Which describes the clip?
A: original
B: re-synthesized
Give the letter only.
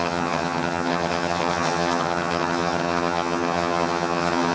B